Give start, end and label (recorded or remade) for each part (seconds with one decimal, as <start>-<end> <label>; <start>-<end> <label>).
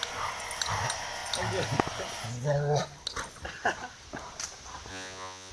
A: 0.0-4.9 recorded; 4.9-5.5 remade